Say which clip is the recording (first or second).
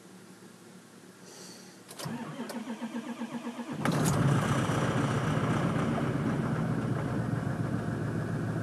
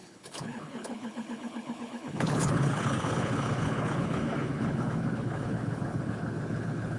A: first